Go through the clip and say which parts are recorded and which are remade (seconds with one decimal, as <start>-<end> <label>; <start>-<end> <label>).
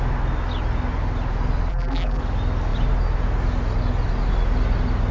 0.0-1.7 recorded; 1.7-2.2 remade; 2.2-5.1 recorded